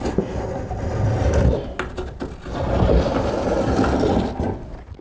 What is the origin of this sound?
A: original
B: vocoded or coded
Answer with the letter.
A